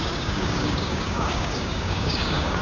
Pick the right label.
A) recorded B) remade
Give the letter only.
B